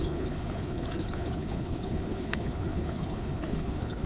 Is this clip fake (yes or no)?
yes